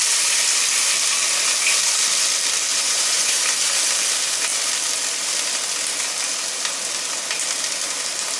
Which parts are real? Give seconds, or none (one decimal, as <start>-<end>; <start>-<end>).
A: 0.0-2.7; 3.4-8.4